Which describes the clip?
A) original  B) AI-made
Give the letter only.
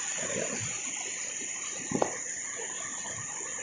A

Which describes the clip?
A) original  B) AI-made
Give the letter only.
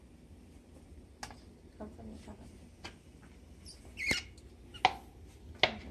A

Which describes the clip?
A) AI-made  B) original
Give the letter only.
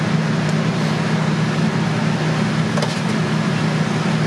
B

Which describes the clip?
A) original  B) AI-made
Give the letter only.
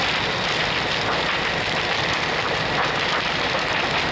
A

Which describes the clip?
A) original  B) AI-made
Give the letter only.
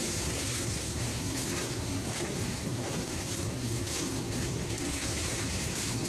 B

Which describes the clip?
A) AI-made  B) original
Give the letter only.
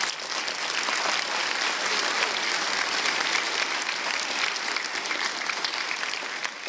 B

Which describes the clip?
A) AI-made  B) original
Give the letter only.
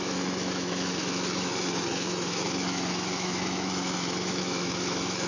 A